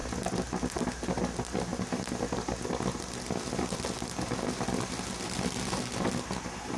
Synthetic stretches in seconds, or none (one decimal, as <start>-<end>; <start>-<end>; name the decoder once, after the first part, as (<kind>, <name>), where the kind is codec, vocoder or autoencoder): none